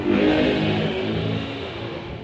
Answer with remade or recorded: remade